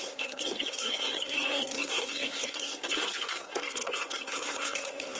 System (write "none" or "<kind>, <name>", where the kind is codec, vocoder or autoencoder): codec, SNAC